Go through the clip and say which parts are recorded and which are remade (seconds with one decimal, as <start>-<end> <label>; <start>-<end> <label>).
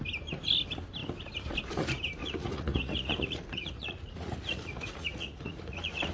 0.0-2.2 recorded; 2.2-6.1 remade